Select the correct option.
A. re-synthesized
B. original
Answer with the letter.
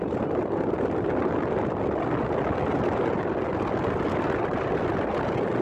B